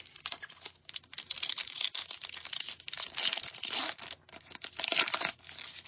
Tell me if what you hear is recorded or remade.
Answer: recorded